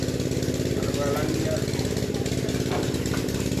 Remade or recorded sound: recorded